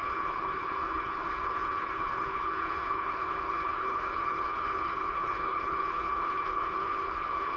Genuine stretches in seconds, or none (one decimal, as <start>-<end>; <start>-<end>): none

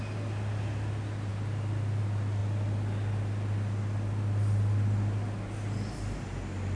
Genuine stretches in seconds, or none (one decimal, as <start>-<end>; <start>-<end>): 0.0-6.8

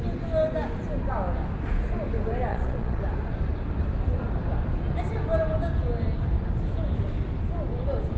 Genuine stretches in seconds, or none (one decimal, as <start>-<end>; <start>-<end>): 0.0-2.5; 3.0-8.2

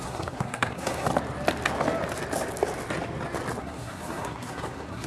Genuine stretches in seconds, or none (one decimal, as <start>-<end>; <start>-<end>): 1.1-3.6

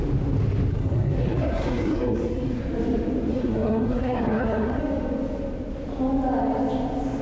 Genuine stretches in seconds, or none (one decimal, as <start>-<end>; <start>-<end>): 0.0-0.7; 2.6-3.3; 4.8-7.2

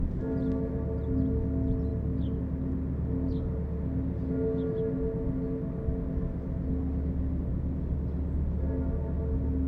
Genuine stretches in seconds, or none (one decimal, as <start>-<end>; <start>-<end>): 0.0-9.7

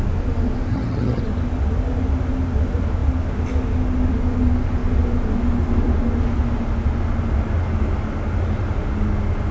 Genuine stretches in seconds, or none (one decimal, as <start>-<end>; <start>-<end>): 0.0-0.7; 1.2-9.5

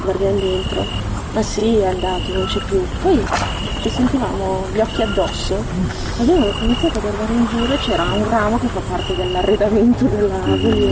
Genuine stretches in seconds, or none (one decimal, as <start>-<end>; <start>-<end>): 0.0-10.9